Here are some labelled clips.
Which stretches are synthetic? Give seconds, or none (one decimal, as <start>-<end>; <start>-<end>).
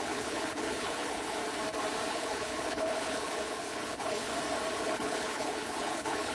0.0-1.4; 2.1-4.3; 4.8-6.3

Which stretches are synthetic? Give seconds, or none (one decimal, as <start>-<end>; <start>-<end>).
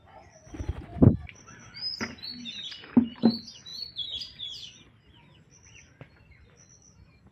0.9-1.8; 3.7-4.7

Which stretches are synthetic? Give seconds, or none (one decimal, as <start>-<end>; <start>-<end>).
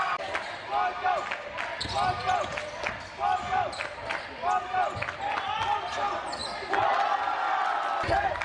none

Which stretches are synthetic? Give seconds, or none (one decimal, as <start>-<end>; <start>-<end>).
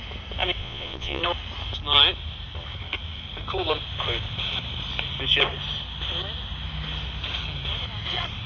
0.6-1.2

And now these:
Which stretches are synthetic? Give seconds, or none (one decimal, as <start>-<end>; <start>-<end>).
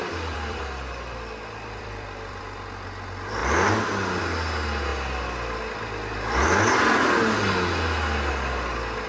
0.0-2.4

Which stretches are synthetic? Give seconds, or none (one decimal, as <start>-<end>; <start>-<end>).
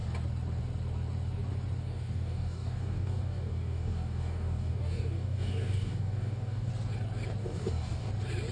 1.8-6.7; 7.4-8.1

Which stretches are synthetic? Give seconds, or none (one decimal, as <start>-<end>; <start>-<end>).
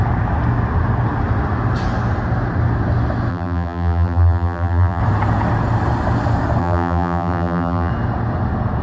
3.3-5.0; 6.6-7.9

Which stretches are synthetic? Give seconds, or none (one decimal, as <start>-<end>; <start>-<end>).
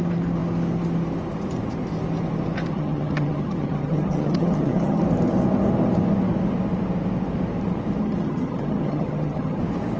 2.7-5.0; 8.0-9.6